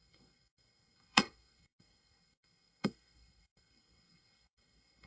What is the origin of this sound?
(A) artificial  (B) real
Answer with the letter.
A